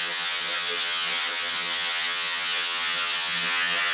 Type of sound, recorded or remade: remade